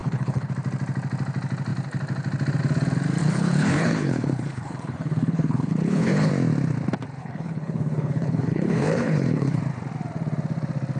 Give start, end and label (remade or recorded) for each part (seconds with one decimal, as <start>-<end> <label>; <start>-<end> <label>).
0.0-0.5 remade; 0.5-3.2 recorded; 3.2-6.3 remade; 6.3-7.2 recorded; 7.2-9.6 remade; 9.6-11.0 recorded